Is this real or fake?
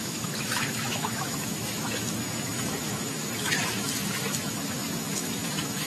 fake